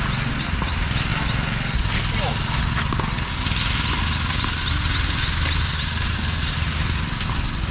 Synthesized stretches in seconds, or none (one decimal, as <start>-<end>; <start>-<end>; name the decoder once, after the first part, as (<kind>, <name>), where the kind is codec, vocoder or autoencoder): none